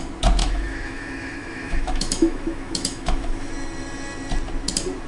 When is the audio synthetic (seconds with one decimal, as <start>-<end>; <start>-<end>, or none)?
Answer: 0.4-3.5